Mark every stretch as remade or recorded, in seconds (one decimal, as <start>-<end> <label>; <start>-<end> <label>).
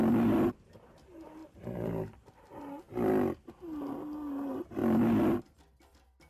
0.0-1.4 recorded; 1.4-2.6 remade; 2.6-6.3 recorded